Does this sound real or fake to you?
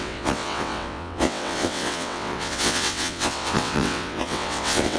fake